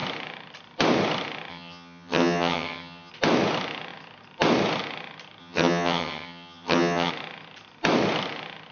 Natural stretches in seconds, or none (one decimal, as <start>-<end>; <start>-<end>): 0.0-1.5; 3.1-5.4; 7.1-8.7